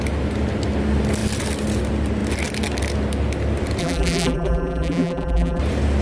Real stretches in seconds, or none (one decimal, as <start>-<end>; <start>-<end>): 0.0-3.8; 5.6-6.0